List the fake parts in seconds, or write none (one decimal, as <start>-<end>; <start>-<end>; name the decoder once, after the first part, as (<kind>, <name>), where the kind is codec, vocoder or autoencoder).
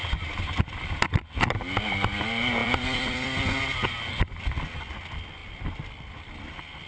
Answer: 0.0-1.0 (vocoder, BigVGAN v2); 2.6-3.6; 5.4-6.3